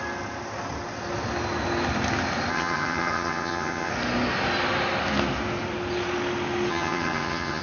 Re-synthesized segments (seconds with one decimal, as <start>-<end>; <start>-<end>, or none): 2.5-3.9; 6.7-7.6